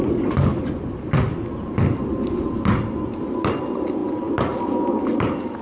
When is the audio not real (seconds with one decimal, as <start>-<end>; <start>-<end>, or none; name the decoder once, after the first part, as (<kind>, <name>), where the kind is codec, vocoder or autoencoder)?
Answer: none